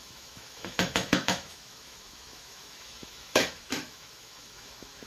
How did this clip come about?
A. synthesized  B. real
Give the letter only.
A